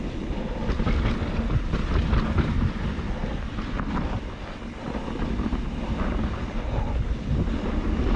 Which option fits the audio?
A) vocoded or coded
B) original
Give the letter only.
B